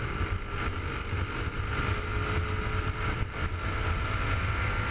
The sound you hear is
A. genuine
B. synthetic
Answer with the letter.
A